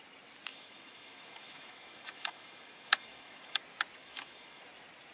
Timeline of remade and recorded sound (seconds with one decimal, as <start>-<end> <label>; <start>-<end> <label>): 0.0-0.5 recorded; 0.5-3.6 remade; 3.6-4.0 recorded; 4.0-4.6 remade; 4.6-5.1 recorded